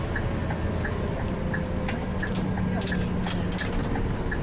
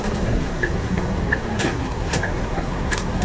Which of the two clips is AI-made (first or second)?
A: second